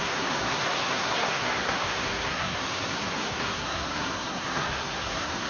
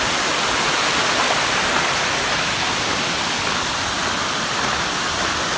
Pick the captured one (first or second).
second